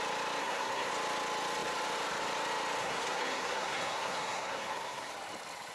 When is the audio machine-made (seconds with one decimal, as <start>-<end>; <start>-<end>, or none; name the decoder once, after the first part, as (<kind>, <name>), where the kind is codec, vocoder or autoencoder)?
0.4-0.9 (codec, SNAC); 2.8-5.1